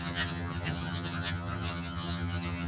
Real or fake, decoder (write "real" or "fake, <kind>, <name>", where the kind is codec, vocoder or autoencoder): fake, vocoder, HiFi-GAN